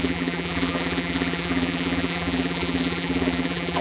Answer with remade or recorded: remade